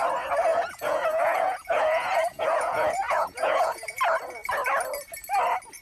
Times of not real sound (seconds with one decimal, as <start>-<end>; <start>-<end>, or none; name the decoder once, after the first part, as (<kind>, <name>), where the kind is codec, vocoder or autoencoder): 0.5-4.0 (vocoder, Vocos)